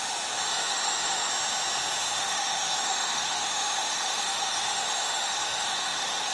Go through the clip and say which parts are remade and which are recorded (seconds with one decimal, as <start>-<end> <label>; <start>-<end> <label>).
0.0-0.5 recorded; 0.5-1.3 remade; 1.3-2.1 recorded; 2.1-6.3 remade